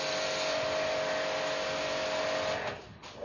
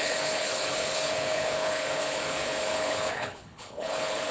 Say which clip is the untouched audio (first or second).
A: first